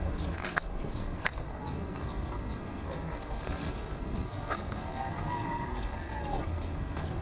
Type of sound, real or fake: fake